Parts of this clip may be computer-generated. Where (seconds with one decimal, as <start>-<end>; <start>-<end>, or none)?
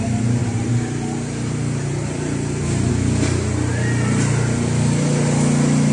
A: 0.4-2.9